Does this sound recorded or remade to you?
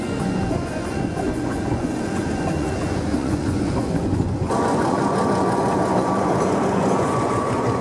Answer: remade